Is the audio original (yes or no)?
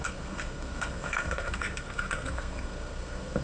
no